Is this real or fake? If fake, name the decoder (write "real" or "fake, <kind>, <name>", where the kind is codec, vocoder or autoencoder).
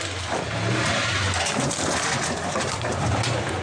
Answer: real